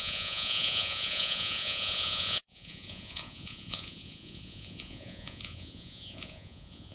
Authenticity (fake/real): fake